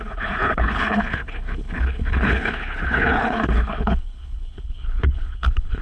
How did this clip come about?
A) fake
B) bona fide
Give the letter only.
A